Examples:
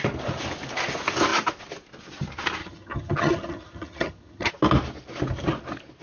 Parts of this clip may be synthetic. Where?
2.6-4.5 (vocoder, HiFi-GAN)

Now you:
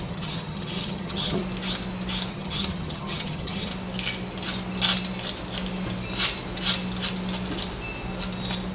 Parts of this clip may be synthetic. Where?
0.0-1.4 (vocoder, HiFi-GAN); 2.3-3.7

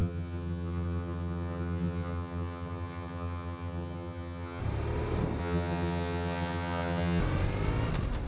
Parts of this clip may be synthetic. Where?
0.0-4.6 (vocoder, HiFi-GAN); 5.4-7.2

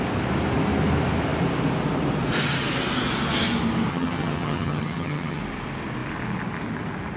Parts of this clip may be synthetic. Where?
3.9-5.4 (vocoder, HiFi-GAN)

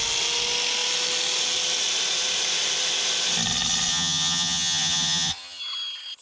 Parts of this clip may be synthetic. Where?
3.9-5.6 (vocoder, HiFi-GAN)

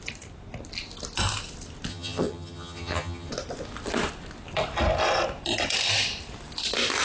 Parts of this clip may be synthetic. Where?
1.9-3.3 (vocoder, HiFi-GAN)